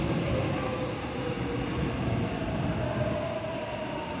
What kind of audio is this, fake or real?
real